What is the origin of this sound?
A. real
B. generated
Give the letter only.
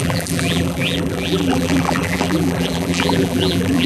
B